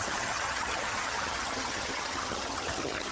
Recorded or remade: remade